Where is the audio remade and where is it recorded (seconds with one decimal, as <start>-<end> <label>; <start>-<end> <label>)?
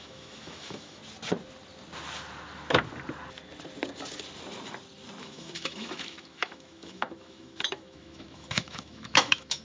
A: 0.0-1.0 remade; 1.0-5.2 recorded; 5.2-9.6 remade